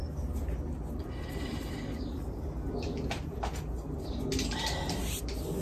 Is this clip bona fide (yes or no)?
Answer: yes